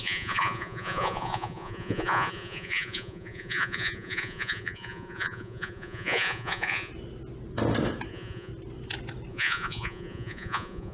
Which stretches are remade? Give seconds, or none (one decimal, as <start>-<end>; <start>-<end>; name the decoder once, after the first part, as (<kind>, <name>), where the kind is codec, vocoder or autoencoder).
0.0-6.9 (vocoder, Vocos); 8.1-8.5; 9.3-10.9